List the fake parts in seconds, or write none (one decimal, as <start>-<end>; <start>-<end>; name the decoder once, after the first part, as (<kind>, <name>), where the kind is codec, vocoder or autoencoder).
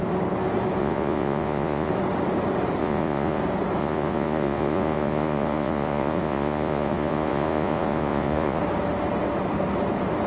0.8-1.9 (vocoder, Vocos); 2.8-3.4; 3.8-8.6